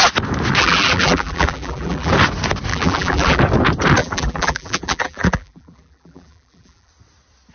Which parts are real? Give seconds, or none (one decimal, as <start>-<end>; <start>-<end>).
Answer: 0.0-0.6; 2.1-2.7; 3.4-4.0; 6.9-7.5